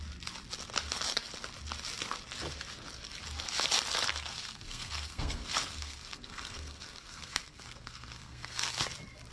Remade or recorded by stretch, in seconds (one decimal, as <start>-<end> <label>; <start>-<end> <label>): 0.0-4.1 recorded; 4.1-8.8 remade; 8.8-9.3 recorded

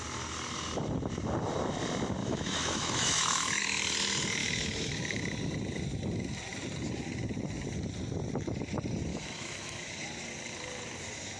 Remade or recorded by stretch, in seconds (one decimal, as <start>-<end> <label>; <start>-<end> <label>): 0.0-2.2 recorded; 2.2-3.6 remade; 3.6-4.4 recorded; 4.4-5.2 remade; 5.2-9.1 recorded; 9.1-9.9 remade; 9.9-11.4 recorded